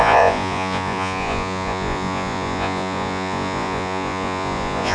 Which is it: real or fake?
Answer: fake